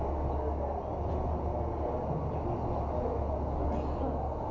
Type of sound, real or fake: real